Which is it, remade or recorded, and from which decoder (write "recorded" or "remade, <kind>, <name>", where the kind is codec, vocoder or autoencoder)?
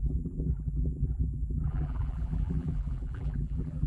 remade, vocoder, BigVGAN v2